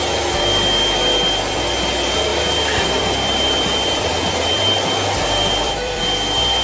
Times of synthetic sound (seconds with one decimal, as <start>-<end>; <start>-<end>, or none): 2.3-6.0